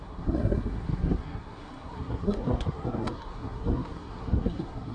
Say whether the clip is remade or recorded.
remade